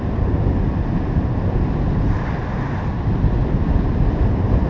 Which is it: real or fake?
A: real